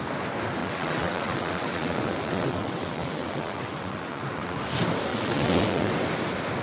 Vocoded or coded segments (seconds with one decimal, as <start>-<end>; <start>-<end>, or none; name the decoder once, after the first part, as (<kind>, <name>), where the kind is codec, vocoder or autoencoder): 0.6-4.6 (vocoder, WaveNeXt); 5.1-5.9